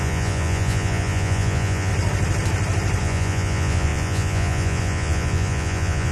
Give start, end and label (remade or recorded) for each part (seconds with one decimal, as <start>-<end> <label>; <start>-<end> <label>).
0.0-1.9 remade; 1.9-3.0 recorded; 3.0-6.1 remade